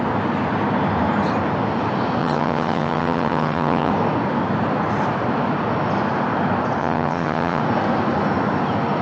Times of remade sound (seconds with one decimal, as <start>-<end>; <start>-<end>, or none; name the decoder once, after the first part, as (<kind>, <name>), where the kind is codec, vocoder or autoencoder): 2.2-3.9 (vocoder, HiFi-GAN); 6.8-7.6